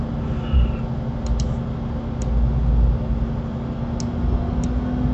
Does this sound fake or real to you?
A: real